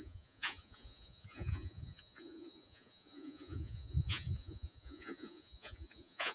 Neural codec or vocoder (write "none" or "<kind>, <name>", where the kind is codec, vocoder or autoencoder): vocoder, Vocos